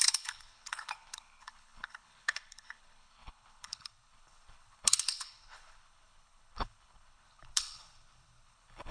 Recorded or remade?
remade